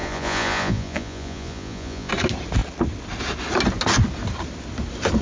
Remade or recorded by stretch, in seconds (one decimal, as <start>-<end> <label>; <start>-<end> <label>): 0.0-2.1 remade; 2.1-5.2 recorded